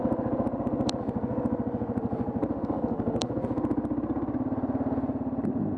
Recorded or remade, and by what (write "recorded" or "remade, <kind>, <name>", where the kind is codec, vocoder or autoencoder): recorded